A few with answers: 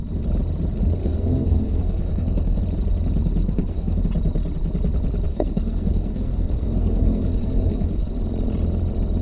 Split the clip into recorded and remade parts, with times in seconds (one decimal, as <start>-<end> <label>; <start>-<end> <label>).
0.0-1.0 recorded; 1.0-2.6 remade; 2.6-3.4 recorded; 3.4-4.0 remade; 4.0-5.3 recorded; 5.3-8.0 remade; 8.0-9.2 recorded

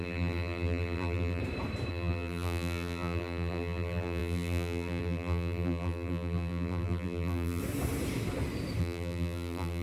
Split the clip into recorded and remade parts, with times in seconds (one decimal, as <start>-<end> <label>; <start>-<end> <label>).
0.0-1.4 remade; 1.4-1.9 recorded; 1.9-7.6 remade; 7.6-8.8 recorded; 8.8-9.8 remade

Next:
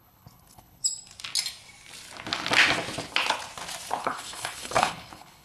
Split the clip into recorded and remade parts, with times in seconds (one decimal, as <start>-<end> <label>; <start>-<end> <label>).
0.0-0.8 remade; 0.8-4.0 recorded; 4.0-5.4 remade

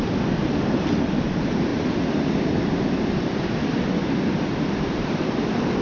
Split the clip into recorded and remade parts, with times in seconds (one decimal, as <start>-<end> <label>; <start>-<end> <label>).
0.0-5.8 remade